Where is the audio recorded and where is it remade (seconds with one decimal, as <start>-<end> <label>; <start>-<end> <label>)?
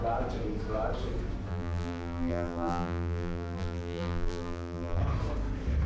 0.0-1.5 recorded; 1.5-5.0 remade; 5.0-5.9 recorded